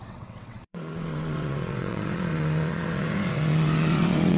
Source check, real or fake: fake